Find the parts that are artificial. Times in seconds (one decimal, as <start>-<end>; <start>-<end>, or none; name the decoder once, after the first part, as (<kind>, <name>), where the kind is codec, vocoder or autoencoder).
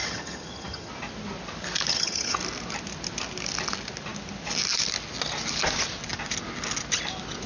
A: 0.0-0.9 (vocoder, HiFi-GAN); 1.9-2.4